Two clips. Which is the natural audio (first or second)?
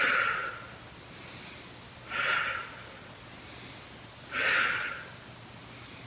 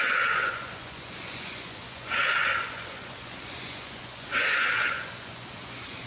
first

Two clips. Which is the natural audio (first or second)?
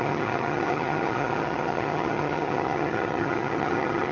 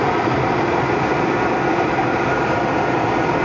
second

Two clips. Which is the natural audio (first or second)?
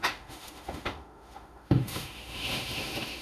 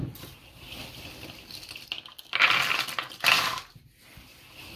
second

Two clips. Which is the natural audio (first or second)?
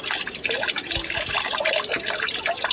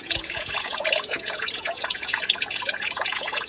first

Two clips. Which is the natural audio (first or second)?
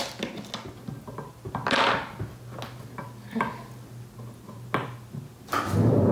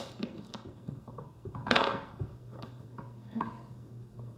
first